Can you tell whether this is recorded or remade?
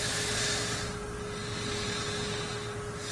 recorded